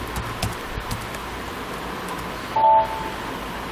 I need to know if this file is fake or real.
real